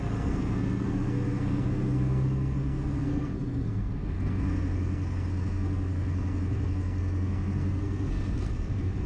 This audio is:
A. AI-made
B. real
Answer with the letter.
A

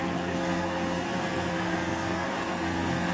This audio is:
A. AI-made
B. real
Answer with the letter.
A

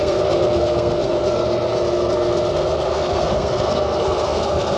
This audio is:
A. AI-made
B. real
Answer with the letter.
A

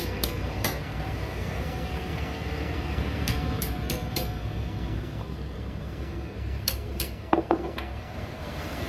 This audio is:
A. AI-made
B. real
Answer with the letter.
A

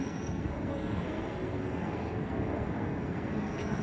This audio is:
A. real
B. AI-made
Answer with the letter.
B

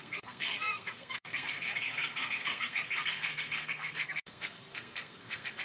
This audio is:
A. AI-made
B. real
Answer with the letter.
A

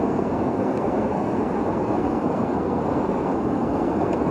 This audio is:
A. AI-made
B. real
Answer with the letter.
A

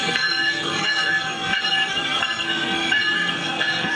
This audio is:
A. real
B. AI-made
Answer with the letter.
B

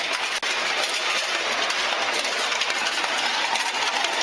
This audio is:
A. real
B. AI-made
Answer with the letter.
A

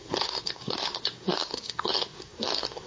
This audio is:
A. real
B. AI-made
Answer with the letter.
B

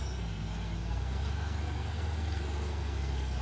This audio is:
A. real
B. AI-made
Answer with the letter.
B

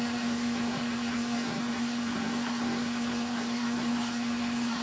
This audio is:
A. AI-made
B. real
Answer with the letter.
A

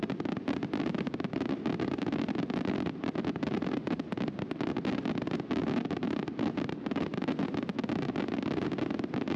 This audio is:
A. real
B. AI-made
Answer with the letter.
A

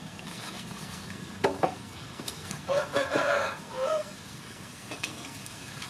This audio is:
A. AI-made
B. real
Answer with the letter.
A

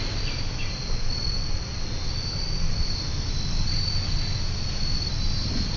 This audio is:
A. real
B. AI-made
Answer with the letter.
A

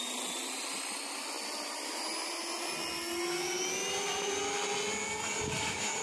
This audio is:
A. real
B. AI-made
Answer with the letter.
A